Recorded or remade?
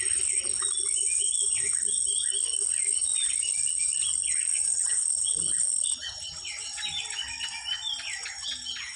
recorded